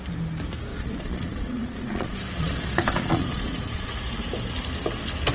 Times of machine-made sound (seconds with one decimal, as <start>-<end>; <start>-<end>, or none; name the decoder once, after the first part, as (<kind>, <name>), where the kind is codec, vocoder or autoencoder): 0.7-3.9 (vocoder, Vocos)

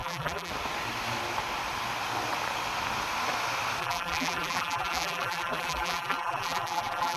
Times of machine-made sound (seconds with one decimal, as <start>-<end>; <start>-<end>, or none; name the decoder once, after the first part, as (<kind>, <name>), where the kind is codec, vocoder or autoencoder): 0.0-0.5 (vocoder, BigVGAN v2); 3.8-7.2

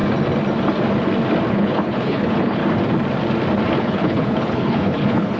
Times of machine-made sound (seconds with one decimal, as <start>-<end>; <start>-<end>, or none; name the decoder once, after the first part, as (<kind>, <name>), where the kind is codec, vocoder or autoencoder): 1.5-2.6 (codec, HILCodec); 3.8-5.4

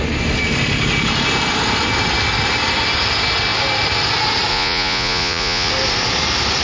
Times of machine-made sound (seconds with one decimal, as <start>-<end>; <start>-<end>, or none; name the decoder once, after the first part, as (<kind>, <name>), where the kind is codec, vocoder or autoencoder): 4.5-5.7 (vocoder, Vocos)

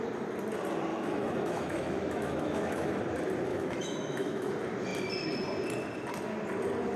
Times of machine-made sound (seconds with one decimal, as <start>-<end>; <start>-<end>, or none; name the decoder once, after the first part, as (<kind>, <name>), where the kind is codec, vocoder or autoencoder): 0.9-3.0 (autoencoder, DAC-VAE); 3.5-4.5

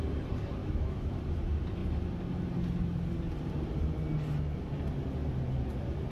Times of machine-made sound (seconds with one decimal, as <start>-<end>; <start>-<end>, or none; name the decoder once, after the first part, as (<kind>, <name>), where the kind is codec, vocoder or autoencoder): 0.6-1.2 (autoencoder, DAC-VAE)

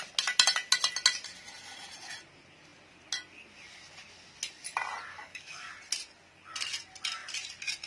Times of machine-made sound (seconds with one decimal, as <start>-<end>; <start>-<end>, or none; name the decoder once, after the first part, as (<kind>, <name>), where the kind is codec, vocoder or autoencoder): 5.1-5.7 (codec, DAC)